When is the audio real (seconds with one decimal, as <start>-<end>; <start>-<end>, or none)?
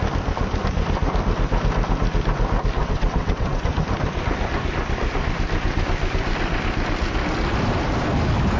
0.0-2.8; 3.7-8.6